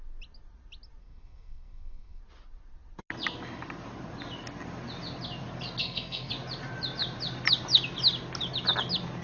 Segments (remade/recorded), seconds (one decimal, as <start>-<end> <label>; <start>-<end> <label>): 0.0-1.0 recorded; 1.0-2.2 remade; 2.2-5.8 recorded; 5.8-6.3 remade; 6.3-9.2 recorded